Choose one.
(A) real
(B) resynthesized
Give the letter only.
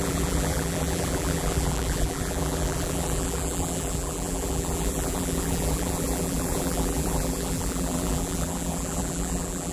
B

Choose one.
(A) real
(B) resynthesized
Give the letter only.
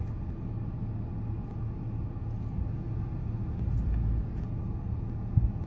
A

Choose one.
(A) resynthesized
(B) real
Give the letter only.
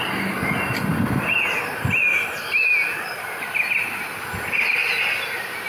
B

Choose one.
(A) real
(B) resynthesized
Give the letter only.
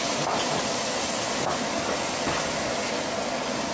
A